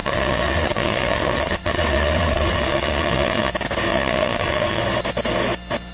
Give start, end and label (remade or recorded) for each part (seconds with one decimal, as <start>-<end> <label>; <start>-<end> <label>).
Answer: 0.0-3.5 remade; 3.5-3.9 recorded; 3.9-4.8 remade; 4.8-5.9 recorded